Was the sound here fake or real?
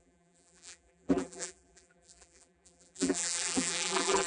fake